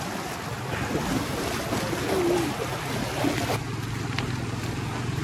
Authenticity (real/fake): real